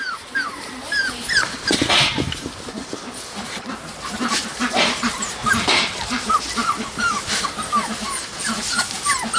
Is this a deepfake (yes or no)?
yes